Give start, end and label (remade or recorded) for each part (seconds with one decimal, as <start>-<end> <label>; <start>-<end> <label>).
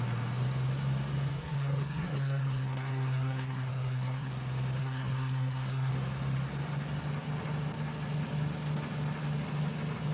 0.0-1.3 recorded; 1.3-4.3 remade; 4.3-4.8 recorded; 4.8-5.9 remade; 5.9-10.1 recorded